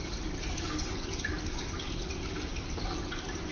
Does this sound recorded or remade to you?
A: recorded